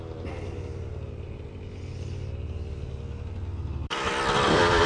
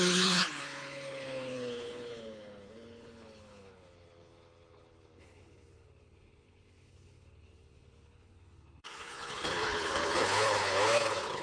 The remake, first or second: second